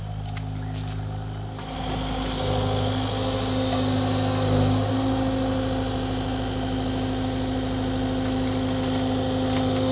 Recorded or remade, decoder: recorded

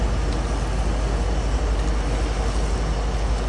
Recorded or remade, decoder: recorded